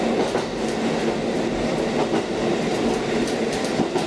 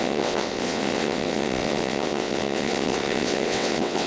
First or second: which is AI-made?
second